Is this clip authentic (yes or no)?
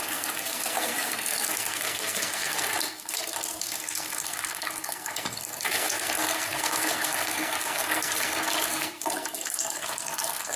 no